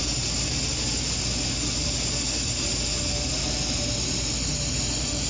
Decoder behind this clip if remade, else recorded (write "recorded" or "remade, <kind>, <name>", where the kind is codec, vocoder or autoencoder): recorded